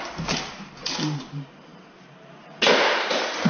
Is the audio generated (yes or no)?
yes